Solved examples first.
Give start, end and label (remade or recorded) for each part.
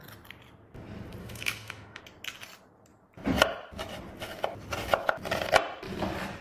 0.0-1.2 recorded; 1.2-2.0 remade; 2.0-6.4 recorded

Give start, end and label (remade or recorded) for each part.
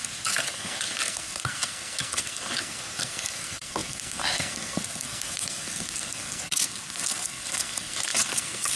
0.0-8.8 remade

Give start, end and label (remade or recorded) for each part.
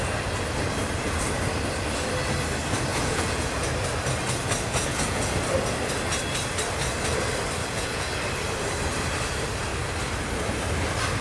0.0-2.9 recorded; 2.9-3.7 remade; 3.7-4.7 recorded; 4.7-5.4 remade; 5.4-7.6 recorded; 7.6-8.1 remade; 8.1-11.2 recorded